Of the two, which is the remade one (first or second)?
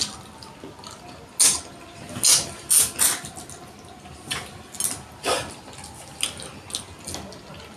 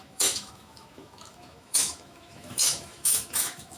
second